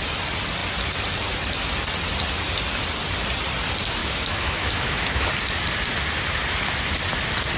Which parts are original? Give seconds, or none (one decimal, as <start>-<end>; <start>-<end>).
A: 0.0-4.0; 5.3-7.6